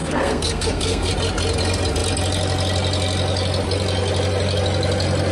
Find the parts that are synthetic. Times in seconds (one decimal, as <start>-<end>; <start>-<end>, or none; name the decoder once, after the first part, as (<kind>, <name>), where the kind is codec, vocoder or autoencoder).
0.0-1.1 (codec, SNAC)